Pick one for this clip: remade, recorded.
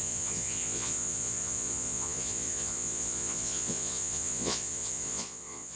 remade